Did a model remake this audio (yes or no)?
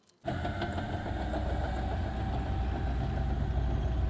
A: no